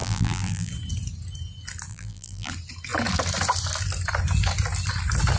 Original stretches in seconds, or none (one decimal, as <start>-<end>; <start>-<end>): 0.7-1.9; 2.5-5.4